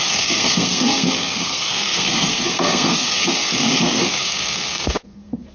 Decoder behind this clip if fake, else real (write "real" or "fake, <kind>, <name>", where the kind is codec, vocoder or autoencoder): fake, codec, SNAC